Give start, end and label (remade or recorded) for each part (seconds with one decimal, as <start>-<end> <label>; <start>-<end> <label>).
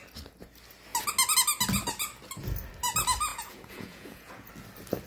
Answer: 0.0-3.3 recorded; 3.3-4.5 remade; 4.5-5.1 recorded